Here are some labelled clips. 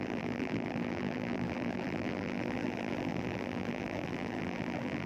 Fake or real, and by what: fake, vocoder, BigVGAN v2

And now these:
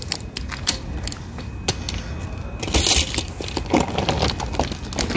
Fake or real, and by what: real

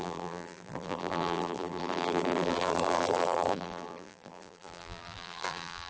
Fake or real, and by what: fake, vocoder, BigVGAN v2